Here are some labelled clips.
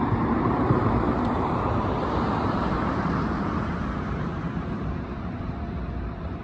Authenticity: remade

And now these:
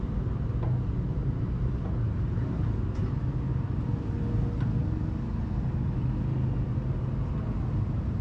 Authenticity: recorded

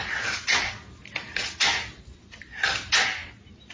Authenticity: recorded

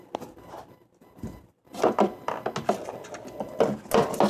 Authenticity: recorded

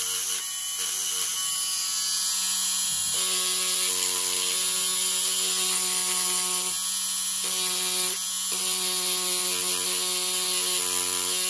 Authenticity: recorded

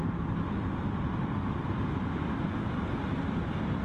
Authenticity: recorded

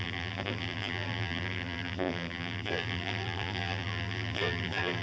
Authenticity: remade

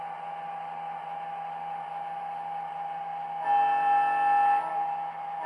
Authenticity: recorded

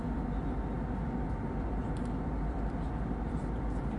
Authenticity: recorded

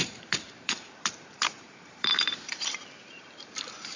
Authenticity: remade